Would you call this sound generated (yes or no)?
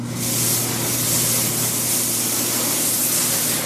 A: no